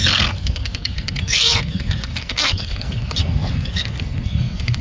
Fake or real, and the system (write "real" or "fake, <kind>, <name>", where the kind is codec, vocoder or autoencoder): fake, codec, SNAC